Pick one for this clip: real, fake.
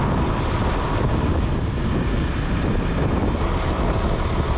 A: real